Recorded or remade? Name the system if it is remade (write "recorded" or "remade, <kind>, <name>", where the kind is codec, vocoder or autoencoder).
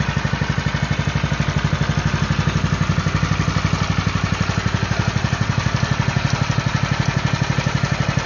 recorded